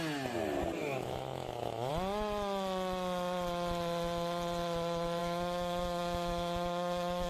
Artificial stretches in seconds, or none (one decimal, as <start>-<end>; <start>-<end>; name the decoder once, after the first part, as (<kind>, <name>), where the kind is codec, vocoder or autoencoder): 0.8-1.9 (autoencoder, DAC-VAE); 5.2-7.3